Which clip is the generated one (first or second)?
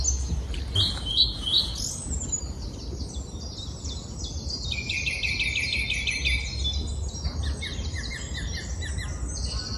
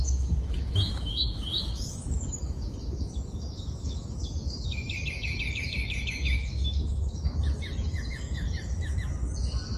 second